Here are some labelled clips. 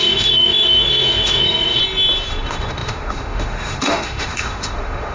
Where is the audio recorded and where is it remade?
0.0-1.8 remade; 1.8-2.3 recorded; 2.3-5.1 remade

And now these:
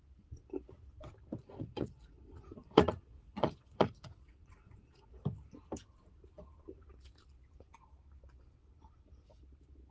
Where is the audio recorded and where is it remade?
0.0-1.4 recorded; 1.4-5.1 remade; 5.1-9.9 recorded

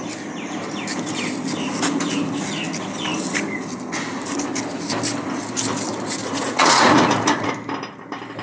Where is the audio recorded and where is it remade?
0.0-6.2 recorded; 6.2-7.5 remade; 7.5-8.4 recorded

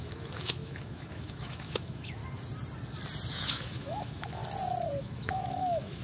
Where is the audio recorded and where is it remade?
0.0-2.2 remade; 2.2-3.3 recorded; 3.3-4.4 remade; 4.4-5.0 recorded; 5.0-6.0 remade

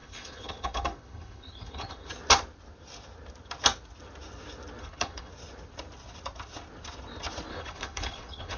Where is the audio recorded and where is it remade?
0.0-2.1 remade; 2.1-4.8 recorded; 4.8-5.3 remade; 5.3-7.5 recorded; 7.5-8.6 remade